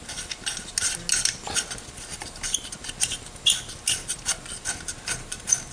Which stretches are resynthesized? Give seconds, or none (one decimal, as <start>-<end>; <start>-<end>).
none